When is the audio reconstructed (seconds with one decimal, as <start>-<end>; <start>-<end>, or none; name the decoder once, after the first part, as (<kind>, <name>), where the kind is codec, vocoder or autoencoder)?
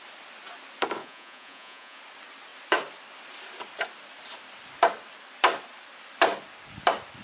1.0-2.0 (vocoder, Vocos)